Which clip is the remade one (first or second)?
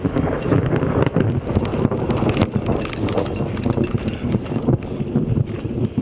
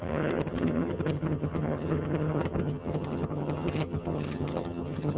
second